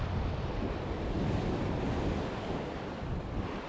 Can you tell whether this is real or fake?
real